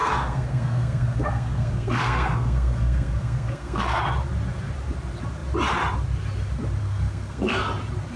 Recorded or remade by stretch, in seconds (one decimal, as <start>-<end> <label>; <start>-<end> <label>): 0.0-4.0 remade; 4.0-6.8 recorded; 6.8-7.6 remade; 7.6-8.2 recorded